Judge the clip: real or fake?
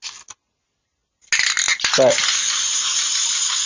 real